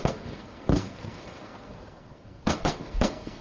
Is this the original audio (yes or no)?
no